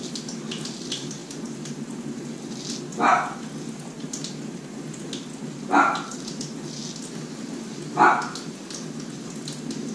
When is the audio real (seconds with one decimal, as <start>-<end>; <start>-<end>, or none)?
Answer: 0.0-9.9